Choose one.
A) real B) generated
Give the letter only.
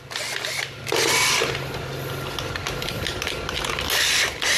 A